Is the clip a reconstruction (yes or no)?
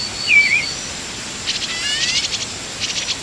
no